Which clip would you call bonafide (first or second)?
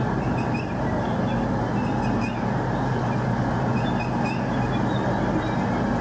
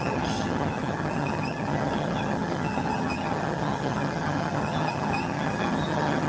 first